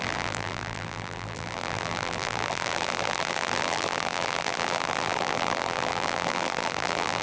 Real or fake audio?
fake